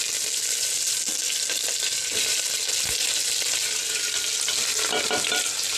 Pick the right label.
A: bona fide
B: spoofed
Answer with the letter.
A